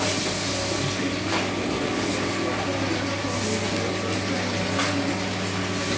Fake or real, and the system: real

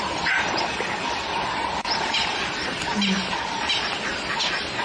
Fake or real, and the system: real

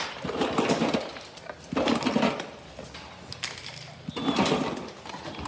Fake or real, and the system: real